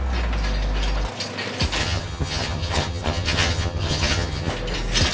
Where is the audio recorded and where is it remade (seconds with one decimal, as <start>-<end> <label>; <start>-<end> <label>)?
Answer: 0.0-1.8 recorded; 1.8-4.5 remade; 4.5-5.1 recorded